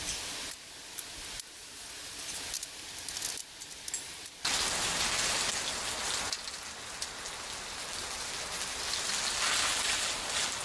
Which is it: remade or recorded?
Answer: recorded